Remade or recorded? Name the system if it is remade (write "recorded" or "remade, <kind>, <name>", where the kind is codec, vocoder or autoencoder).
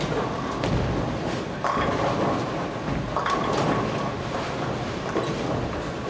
recorded